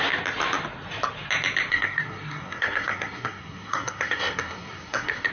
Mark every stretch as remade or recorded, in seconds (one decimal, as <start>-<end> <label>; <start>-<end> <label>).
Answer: 0.0-1.7 recorded; 1.7-5.3 remade

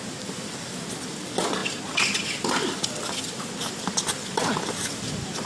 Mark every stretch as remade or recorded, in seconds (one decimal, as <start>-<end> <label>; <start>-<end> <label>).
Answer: 0.0-5.5 recorded